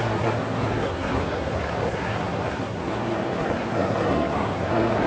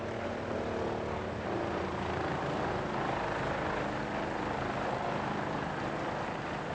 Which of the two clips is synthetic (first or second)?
first